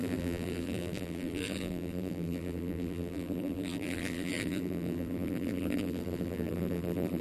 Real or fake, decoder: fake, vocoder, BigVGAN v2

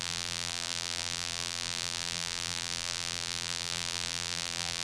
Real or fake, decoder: fake, vocoder, BigVGAN v2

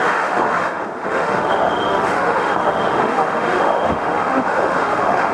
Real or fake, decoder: fake, autoencoder, DAC-VAE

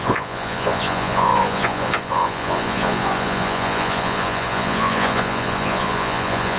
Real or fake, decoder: fake, vocoder, Vocos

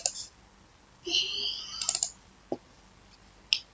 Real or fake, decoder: real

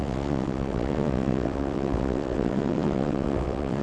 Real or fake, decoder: fake, vocoder, WaveNeXt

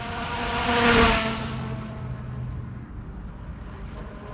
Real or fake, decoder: real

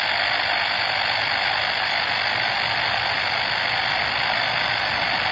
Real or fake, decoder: real